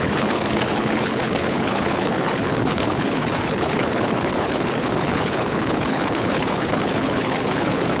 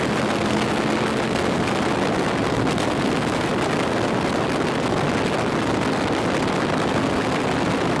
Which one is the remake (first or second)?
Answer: first